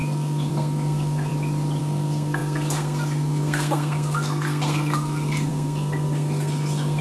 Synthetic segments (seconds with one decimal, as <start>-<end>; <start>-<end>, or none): 0.0-1.3; 1.8-7.0